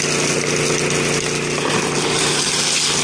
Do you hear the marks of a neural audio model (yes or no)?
no